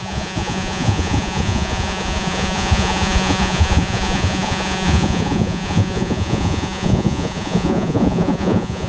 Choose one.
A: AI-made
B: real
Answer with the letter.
A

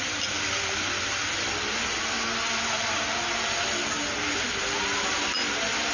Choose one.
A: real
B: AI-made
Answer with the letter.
A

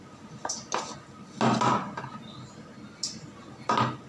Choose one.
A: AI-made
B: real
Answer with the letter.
B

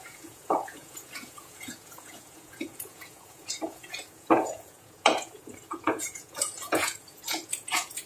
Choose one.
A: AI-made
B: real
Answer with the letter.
A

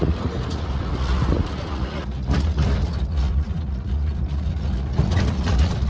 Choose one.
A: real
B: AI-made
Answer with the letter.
B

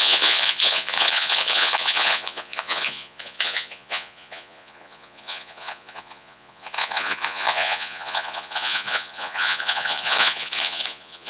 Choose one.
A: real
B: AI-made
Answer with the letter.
B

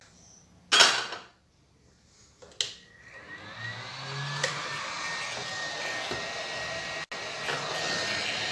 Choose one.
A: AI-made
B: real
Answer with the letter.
B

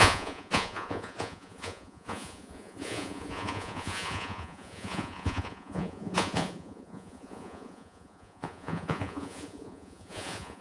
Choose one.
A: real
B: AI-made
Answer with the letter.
B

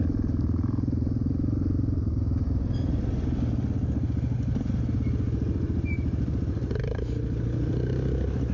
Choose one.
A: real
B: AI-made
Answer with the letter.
A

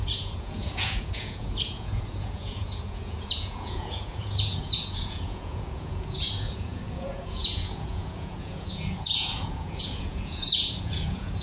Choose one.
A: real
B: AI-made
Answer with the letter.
B